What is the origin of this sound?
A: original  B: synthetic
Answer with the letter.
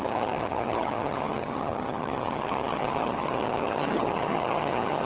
B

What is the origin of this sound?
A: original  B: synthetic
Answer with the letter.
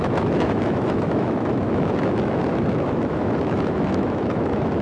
B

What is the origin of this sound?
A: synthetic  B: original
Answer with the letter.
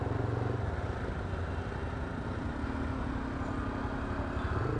B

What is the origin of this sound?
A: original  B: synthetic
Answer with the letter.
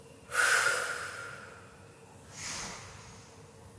A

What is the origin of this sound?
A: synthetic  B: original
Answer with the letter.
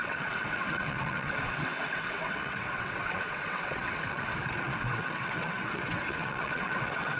A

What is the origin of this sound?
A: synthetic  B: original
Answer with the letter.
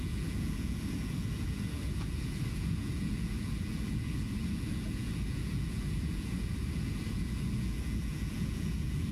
A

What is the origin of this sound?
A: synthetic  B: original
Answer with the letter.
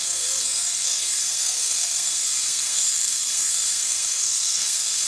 A